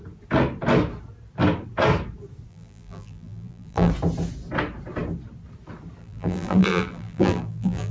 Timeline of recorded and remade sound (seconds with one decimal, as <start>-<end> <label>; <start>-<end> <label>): 0.0-2.5 recorded; 2.5-3.9 remade; 3.9-6.0 recorded; 6.0-7.9 remade